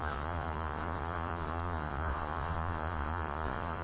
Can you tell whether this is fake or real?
fake